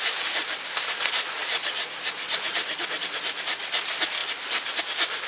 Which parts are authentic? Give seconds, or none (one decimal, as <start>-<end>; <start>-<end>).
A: 0.0-5.3

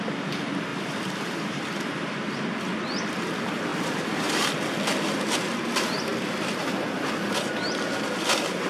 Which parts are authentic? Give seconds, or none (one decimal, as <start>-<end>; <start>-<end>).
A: 0.0-0.7; 2.3-8.7

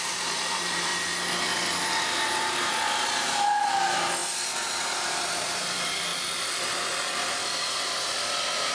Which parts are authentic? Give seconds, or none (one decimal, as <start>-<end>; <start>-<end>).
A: 0.9-2.3; 6.1-7.7

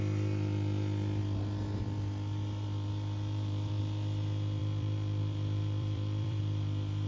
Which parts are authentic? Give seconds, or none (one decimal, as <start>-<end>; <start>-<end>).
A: 0.0-1.2; 3.8-4.6; 6.4-7.1

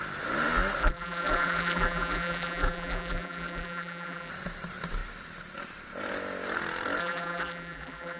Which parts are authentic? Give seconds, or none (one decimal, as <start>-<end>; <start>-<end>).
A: 0.0-0.8; 4.3-7.0

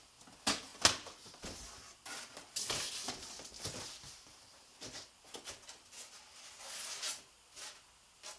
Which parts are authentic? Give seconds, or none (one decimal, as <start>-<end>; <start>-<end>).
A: 0.0-8.4

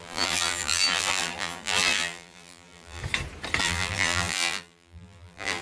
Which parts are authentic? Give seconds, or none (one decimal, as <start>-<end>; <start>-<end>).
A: 3.0-3.6